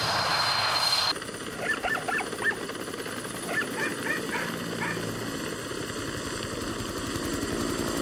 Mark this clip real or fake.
real